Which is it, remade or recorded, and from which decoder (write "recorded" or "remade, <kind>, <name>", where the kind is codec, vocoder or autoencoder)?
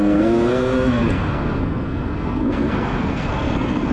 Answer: remade, codec, SNAC